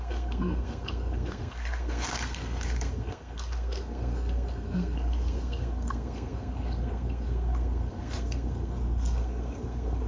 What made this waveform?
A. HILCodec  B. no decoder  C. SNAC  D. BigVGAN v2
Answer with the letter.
C